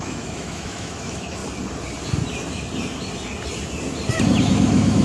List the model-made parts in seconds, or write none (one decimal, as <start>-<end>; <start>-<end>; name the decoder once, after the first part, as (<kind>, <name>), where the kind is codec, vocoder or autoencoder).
0.0-1.4 (autoencoder, DAC-VAE); 4.4-5.0